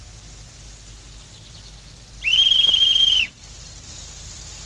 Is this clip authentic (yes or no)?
yes